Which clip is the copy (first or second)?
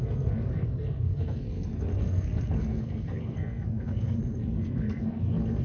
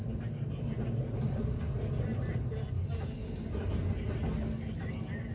first